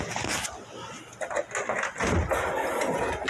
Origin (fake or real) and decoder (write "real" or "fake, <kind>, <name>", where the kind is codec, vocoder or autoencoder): real